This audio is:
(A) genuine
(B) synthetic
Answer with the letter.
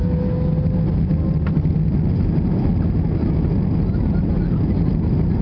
A